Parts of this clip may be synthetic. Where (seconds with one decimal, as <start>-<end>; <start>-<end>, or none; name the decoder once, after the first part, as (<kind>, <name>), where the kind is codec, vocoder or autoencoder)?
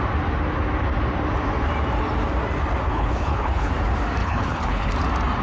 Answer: 2.9-3.7 (codec, HILCodec); 4.2-4.9